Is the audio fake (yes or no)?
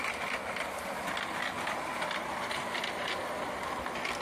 no